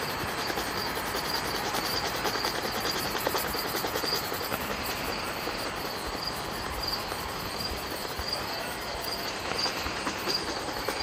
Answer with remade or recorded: remade